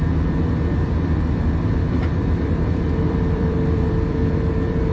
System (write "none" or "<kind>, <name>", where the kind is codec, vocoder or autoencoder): vocoder, BigVGAN v2